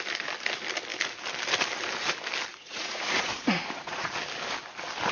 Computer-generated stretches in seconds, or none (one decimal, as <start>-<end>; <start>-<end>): 2.5-4.1